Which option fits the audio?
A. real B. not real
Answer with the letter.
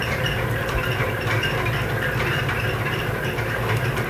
B